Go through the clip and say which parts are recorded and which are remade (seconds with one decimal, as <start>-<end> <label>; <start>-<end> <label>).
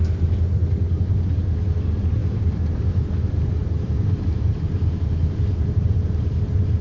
0.0-2.2 recorded; 2.2-3.0 remade; 3.0-3.6 recorded; 3.6-6.3 remade; 6.3-6.8 recorded